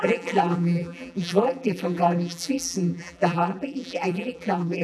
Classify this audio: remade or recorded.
remade